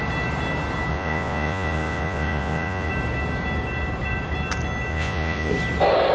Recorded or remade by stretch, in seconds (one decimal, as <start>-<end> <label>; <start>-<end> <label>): 0.0-0.9 recorded; 0.9-2.9 remade; 2.9-4.9 recorded; 4.9-5.5 remade; 5.5-6.1 recorded